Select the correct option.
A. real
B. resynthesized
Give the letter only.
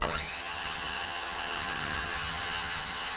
B